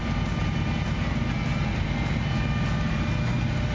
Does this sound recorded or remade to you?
recorded